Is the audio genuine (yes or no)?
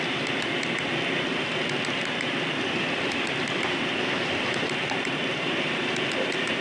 no